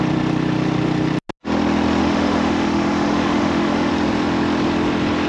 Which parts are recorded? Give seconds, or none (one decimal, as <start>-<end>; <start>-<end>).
0.0-2.0; 3.9-5.3